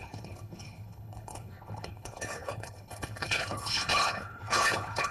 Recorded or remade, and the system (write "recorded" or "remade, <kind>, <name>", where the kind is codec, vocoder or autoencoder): remade, codec, HILCodec